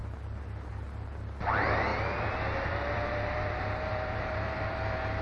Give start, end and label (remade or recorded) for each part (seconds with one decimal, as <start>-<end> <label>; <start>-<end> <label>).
0.0-1.9 recorded; 1.9-5.2 remade